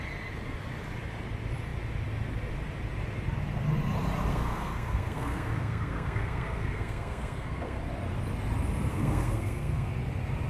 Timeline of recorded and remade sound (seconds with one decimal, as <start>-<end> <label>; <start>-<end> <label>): 0.0-4.3 recorded; 4.3-7.8 remade; 7.8-8.9 recorded; 8.9-9.9 remade; 9.9-10.5 recorded